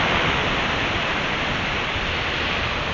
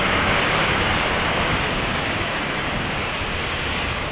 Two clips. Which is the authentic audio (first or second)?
first